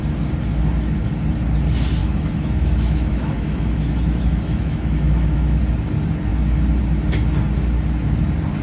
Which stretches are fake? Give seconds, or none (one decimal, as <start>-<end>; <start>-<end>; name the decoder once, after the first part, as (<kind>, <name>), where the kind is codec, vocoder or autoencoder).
2.0-5.6 (autoencoder, DAC-VAE)